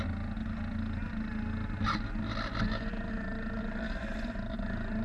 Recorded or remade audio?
recorded